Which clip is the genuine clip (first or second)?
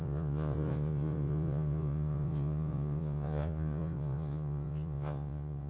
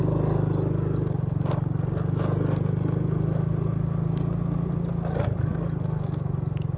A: second